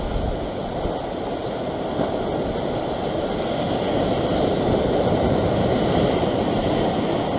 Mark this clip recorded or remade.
recorded